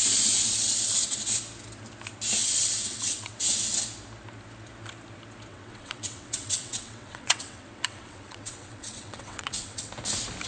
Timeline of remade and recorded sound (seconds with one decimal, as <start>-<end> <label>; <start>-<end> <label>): 0.0-2.4 recorded; 2.4-3.3 remade; 3.3-5.5 recorded; 5.5-9.9 remade; 9.9-10.5 recorded